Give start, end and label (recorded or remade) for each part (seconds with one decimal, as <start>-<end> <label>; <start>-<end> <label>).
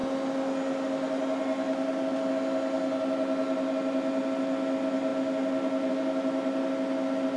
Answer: 0.0-7.4 recorded